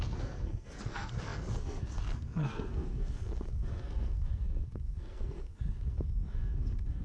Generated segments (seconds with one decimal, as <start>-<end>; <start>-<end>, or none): 0.0-7.0